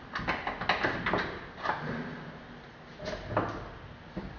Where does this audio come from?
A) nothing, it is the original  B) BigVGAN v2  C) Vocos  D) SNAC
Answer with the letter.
A